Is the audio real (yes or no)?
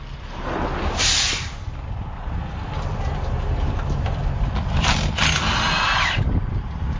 no